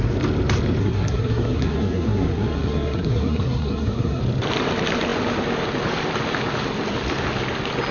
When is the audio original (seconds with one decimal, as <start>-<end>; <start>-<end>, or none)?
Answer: 0.0-0.8; 4.2-7.9